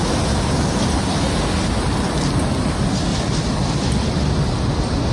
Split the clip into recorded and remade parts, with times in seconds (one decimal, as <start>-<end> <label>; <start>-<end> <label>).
0.0-3.1 recorded; 3.1-4.1 remade; 4.1-5.1 recorded